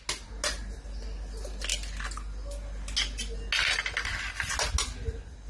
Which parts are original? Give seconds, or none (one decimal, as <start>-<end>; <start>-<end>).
0.0-5.5